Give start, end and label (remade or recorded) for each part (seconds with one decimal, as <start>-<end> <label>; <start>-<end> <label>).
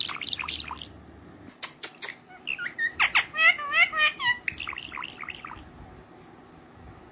0.0-7.1 recorded